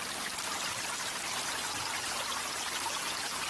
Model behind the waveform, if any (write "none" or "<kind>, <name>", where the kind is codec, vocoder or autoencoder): none